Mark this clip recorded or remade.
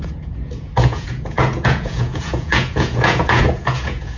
remade